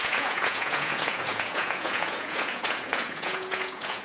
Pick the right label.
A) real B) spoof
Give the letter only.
B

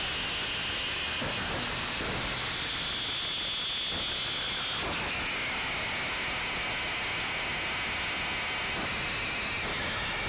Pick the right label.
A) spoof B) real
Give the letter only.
B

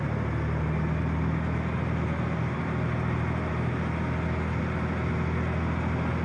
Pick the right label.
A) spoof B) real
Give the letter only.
B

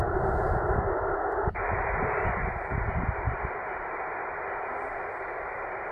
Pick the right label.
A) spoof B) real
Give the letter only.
A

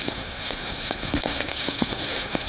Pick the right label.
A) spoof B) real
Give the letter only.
A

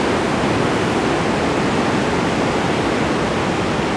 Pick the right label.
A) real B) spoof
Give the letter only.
A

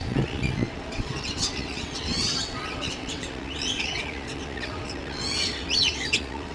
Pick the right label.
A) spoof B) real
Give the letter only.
A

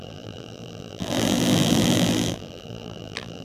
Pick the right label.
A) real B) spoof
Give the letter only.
B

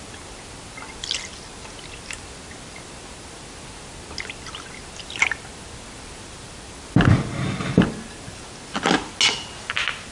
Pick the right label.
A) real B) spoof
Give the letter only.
A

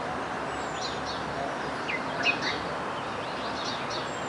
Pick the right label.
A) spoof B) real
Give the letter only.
B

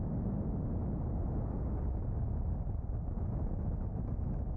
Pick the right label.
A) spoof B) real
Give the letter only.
B